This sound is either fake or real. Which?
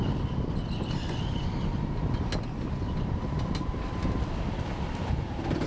real